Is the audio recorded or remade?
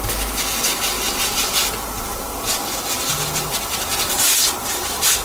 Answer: recorded